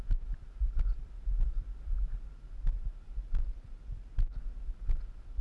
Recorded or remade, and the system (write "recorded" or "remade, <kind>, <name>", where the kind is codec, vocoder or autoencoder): recorded